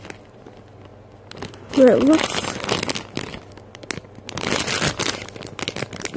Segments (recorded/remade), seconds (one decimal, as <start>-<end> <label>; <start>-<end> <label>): 0.0-6.2 recorded